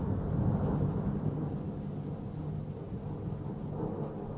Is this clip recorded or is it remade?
recorded